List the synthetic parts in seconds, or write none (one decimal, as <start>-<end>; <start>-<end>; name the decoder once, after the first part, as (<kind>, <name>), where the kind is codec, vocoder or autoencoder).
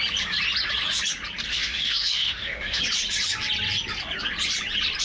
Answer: 1.5-2.8 (autoencoder, DAC-VAE)